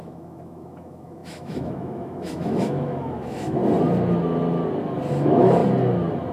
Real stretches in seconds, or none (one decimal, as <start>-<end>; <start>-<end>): 3.6-5.1; 5.6-6.3